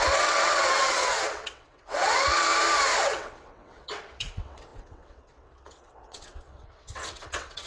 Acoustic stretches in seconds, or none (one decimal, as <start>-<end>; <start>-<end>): 2.5-3.0

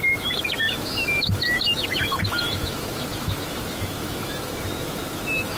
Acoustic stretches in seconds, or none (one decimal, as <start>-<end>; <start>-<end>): none